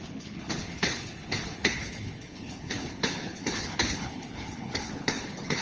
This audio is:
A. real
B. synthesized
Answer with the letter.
B